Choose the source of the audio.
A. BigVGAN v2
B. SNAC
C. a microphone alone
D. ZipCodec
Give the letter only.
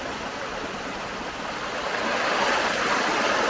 C